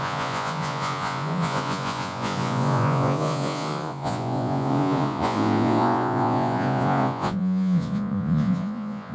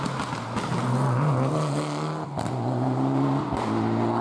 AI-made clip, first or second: first